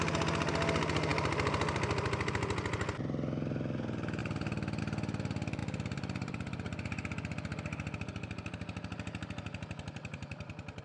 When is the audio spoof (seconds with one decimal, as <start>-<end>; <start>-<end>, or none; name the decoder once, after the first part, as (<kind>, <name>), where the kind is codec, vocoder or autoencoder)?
1.1-2.3 (vocoder, BigVGAN v2); 4.2-4.8; 5.6-10.8